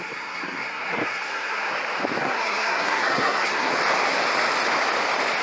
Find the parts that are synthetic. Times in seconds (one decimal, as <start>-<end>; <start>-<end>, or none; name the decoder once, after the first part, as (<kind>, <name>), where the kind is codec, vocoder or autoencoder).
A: 0.0-1.7 (codec, SNAC); 2.2-3.7